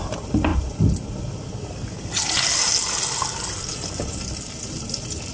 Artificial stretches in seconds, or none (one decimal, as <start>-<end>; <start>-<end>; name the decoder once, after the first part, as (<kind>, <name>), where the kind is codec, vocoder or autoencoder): none

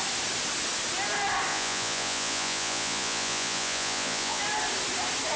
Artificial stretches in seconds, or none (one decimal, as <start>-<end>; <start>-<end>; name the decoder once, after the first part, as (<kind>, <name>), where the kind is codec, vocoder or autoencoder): 1.5-4.4 (vocoder, Vocos)

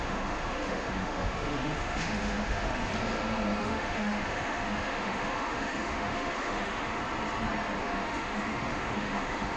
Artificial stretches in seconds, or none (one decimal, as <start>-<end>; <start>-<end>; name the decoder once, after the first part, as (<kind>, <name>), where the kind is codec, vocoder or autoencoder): 0.0-2.9 (autoencoder, DAC-VAE); 3.6-7.0; 7.8-9.6

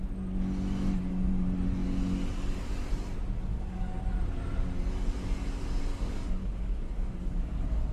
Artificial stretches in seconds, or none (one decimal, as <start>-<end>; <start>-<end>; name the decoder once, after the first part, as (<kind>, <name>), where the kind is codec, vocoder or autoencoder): 3.5-4.0 (codec, DAC); 5.9-7.9

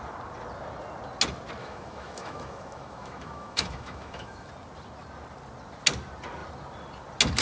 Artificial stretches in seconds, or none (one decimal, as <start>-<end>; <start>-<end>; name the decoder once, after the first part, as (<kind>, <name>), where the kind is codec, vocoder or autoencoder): 1.6-4.5 (autoencoder, DAC-VAE)

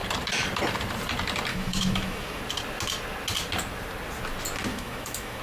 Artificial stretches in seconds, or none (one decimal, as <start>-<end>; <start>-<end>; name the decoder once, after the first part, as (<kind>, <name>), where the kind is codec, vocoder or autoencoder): 1.5-2.4 (autoencoder, DAC-VAE); 4.7-5.4

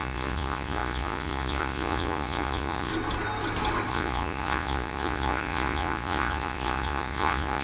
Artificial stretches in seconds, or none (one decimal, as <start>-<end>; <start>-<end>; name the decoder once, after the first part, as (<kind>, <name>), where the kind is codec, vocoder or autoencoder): 0.0-2.9 (vocoder, Vocos); 3.9-7.6

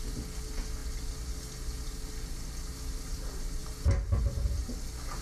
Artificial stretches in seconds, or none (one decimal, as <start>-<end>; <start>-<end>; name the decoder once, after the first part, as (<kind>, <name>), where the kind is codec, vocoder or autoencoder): none